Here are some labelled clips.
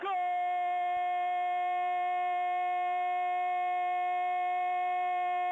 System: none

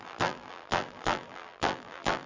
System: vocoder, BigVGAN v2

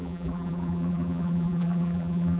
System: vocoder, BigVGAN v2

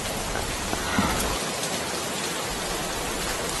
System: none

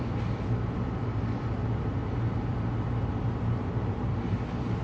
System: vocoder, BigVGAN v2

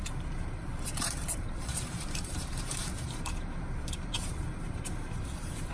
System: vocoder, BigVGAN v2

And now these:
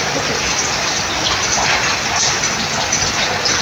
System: none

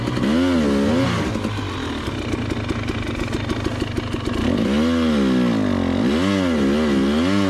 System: none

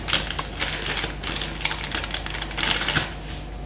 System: none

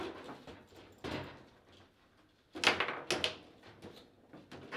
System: none